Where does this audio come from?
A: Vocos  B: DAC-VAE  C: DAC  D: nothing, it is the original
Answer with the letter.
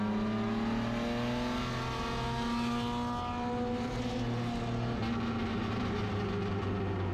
D